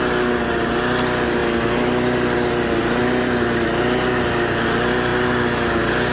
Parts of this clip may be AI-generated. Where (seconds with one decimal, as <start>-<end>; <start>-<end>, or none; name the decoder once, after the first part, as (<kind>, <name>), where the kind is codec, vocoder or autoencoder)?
none